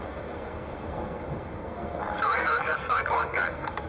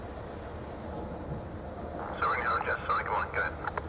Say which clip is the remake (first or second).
first